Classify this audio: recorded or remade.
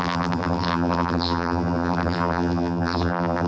remade